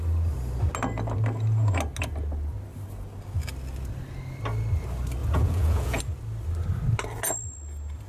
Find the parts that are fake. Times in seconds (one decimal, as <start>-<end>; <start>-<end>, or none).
5.2-6.0